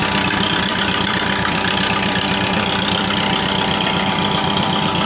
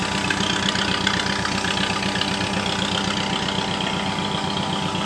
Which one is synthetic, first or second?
first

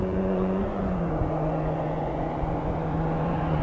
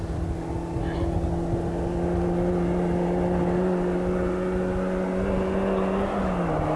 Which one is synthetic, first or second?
first